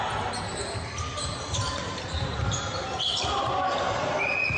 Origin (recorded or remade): recorded